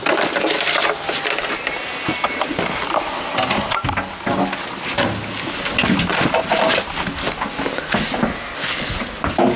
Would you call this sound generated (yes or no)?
no